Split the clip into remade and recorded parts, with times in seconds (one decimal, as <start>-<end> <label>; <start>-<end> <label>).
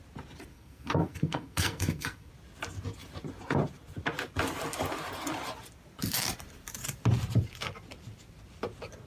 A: 0.0-0.5 recorded; 0.5-2.3 remade; 2.3-9.1 recorded